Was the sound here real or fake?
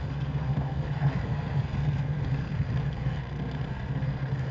fake